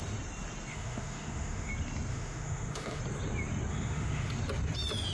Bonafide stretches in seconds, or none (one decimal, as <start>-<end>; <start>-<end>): 0.0-0.7; 1.7-2.1; 3.0-3.7; 4.3-5.1